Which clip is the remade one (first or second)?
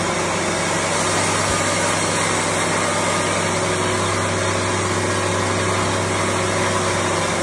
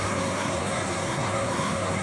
second